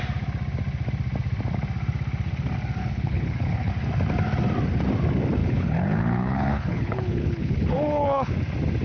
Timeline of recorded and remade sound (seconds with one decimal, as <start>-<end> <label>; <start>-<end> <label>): 0.0-2.8 recorded; 2.8-3.7 remade; 3.7-5.4 recorded; 5.4-8.3 remade; 8.3-8.8 recorded